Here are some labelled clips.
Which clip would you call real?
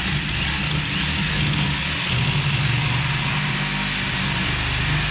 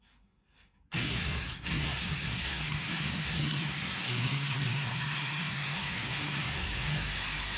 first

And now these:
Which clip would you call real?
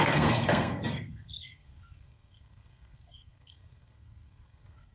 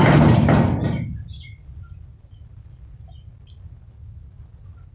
second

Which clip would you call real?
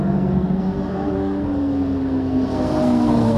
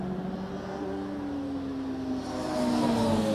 second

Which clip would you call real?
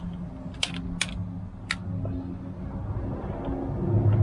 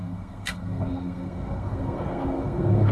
first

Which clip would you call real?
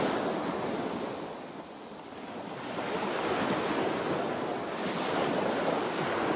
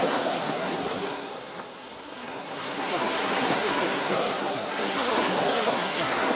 first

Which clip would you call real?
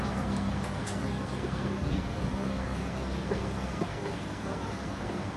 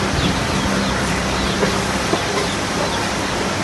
second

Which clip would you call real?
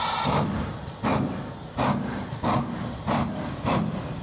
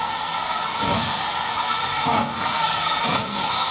first